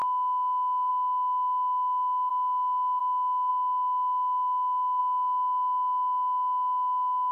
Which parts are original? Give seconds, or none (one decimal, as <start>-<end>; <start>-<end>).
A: 0.0-7.3